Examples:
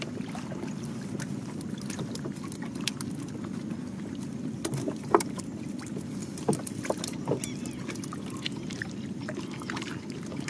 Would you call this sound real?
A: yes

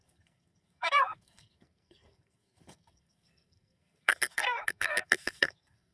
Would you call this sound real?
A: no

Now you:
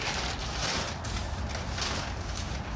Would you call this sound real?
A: yes